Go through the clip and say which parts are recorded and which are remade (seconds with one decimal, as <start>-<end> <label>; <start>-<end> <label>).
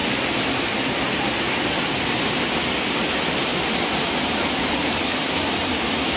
0.0-4.6 recorded; 4.6-5.2 remade; 5.2-6.2 recorded